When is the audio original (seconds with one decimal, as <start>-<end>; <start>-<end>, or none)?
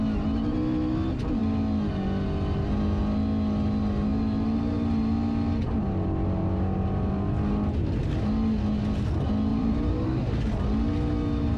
0.0-9.5; 10.4-11.6